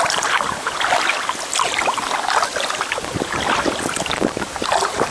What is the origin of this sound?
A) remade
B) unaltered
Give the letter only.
B